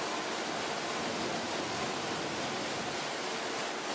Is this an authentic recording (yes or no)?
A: yes